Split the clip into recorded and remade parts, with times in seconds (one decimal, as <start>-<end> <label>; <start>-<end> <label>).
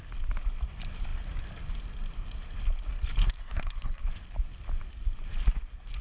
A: 0.0-3.2 recorded; 3.2-4.0 remade; 4.0-6.0 recorded